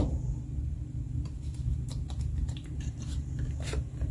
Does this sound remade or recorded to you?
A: remade